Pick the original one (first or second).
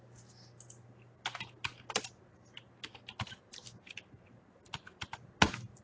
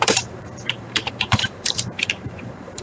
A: first